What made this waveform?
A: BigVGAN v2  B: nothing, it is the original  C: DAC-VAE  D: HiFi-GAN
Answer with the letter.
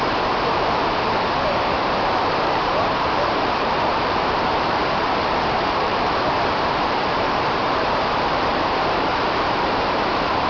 A